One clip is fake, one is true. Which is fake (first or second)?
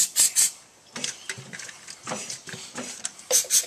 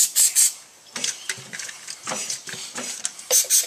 first